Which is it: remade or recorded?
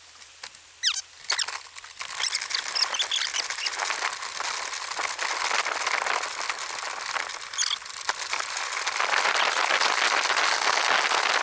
recorded